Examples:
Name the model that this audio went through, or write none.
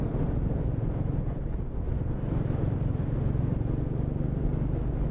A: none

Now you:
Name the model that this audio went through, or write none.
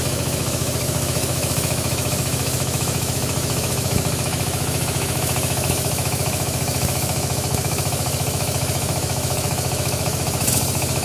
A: autoencoder, DAC-VAE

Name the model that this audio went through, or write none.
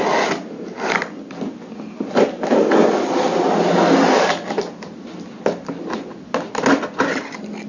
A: none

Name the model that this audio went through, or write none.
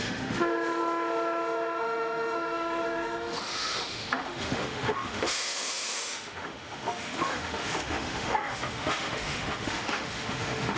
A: autoencoder, DAC-VAE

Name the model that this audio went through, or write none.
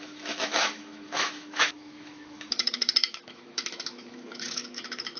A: autoencoder, DAC-VAE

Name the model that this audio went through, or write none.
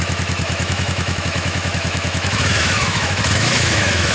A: autoencoder, DAC-VAE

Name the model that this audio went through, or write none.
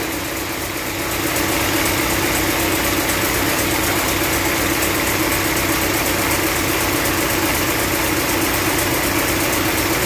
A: none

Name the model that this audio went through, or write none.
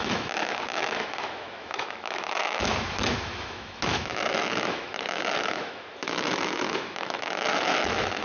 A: autoencoder, DAC-VAE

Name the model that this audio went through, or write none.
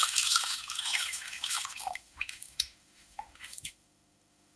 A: autoencoder, DAC-VAE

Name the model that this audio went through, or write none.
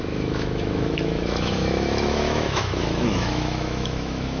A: autoencoder, DAC-VAE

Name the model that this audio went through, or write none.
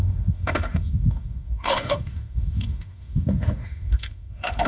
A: autoencoder, DAC-VAE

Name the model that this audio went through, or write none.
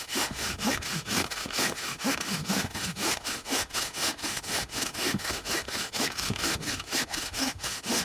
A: autoencoder, DAC-VAE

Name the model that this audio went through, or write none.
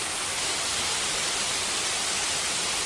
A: none